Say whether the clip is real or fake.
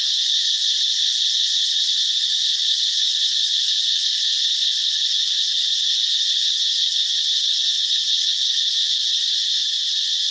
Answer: real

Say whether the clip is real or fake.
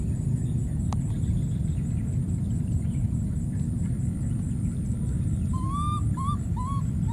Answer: real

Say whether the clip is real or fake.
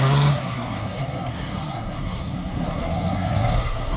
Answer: fake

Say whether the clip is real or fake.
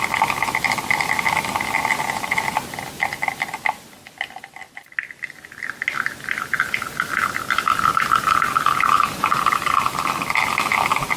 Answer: real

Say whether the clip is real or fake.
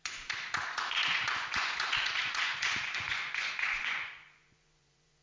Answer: fake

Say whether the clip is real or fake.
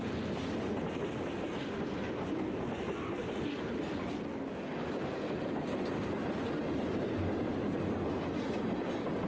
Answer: real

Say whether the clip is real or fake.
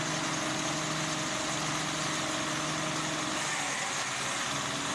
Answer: real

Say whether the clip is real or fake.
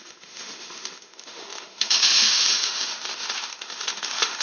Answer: fake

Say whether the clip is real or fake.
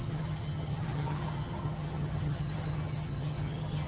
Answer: fake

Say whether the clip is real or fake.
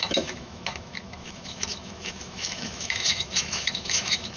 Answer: fake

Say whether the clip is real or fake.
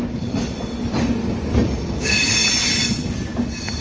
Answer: real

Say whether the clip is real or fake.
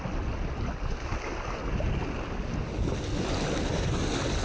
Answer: real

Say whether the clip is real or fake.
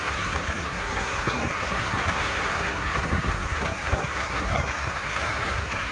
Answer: fake